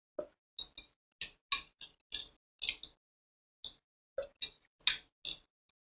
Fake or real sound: real